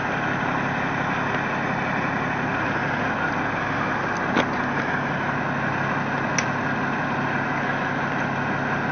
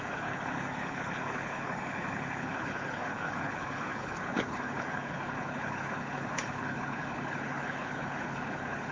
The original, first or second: first